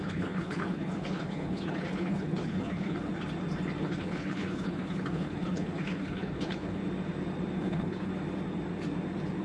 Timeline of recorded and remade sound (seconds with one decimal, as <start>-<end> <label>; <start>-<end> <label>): 0.0-3.1 remade; 3.1-3.8 recorded; 3.8-6.8 remade; 6.8-7.6 recorded; 7.6-8.1 remade; 8.1-9.4 recorded